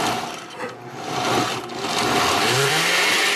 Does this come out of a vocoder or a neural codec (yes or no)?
no